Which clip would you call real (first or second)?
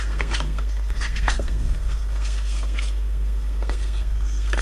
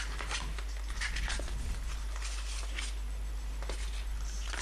second